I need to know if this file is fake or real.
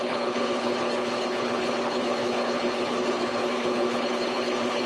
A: fake